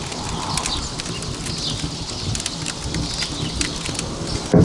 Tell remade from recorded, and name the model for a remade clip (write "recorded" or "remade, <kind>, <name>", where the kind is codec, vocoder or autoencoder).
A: recorded